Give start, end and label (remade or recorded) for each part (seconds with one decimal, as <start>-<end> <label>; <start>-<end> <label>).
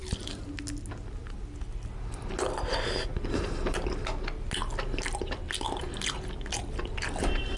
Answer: 0.0-7.6 recorded